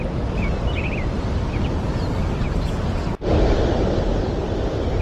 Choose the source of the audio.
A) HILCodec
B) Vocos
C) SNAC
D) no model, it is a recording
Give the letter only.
D